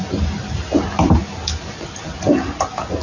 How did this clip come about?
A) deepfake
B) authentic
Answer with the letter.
B